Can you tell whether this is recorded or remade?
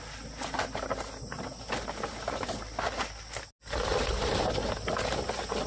recorded